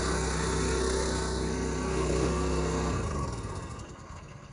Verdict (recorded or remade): remade